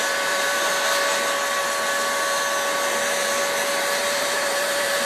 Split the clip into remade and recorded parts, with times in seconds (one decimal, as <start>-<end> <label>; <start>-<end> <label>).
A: 0.0-0.7 remade; 0.7-3.8 recorded; 3.8-5.1 remade